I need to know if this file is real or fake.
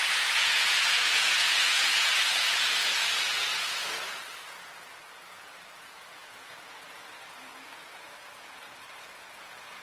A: fake